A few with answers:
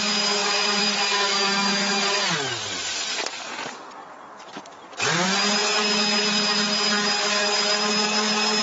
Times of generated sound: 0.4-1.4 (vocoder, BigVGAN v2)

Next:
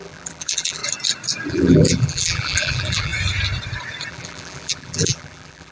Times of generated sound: 0.0-0.8 (vocoder, BigVGAN v2); 1.5-3.1; 4.1-5.7